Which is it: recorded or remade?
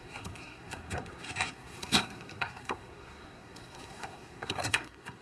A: remade